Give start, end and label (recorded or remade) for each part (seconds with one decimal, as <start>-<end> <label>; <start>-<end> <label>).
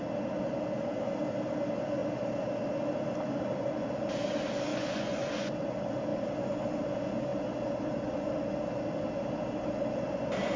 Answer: 0.0-4.7 recorded; 4.7-5.5 remade; 5.5-10.6 recorded